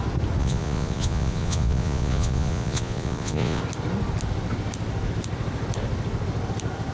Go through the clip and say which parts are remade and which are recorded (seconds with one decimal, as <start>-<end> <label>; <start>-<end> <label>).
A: 0.0-0.4 recorded; 0.4-3.6 remade; 3.6-6.9 recorded